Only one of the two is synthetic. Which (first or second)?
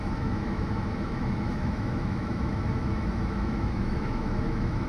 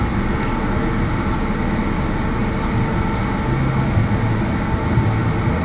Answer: first